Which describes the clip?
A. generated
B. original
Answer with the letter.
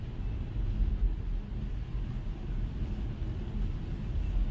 B